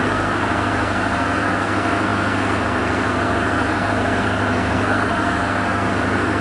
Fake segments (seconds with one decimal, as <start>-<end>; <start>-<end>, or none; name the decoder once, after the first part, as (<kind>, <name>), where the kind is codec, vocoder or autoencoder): 0.0-6.4 (codec, SNAC)